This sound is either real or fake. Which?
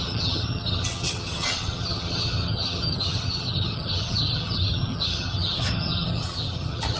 fake